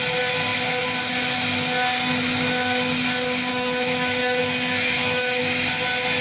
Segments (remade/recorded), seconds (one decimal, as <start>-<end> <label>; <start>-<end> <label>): 0.0-3.5 recorded; 3.5-5.4 remade; 5.4-6.2 recorded